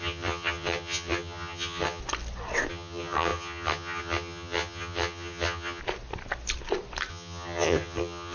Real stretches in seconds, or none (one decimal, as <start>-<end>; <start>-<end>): 2.0-2.7; 5.8-7.1